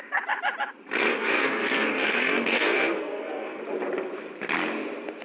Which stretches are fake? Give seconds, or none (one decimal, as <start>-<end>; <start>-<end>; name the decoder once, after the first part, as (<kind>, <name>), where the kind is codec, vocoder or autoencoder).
1.1-3.6 (codec, SNAC)